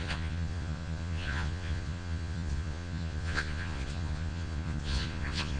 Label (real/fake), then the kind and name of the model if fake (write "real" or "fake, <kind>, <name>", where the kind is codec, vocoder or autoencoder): fake, vocoder, Vocos